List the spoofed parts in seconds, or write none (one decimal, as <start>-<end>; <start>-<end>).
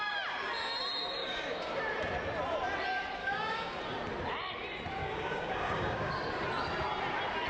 1.2-1.7; 3.2-3.8; 5.0-6.1